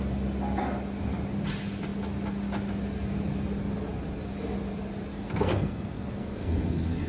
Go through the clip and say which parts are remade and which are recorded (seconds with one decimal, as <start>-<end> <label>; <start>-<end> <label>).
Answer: 0.0-5.1 recorded; 5.1-7.1 remade